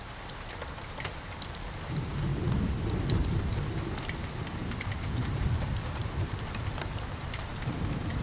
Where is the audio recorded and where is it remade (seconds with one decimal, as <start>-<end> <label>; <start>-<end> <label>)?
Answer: 0.0-2.3 remade; 2.3-3.1 recorded; 3.1-8.2 remade